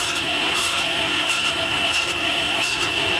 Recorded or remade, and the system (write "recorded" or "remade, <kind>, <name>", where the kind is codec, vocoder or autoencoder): remade, codec, SNAC